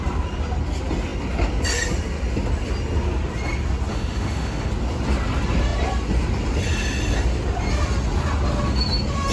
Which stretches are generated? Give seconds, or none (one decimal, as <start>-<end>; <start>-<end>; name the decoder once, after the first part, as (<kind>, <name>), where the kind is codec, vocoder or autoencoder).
3.9-4.7 (autoencoder, DAC-VAE)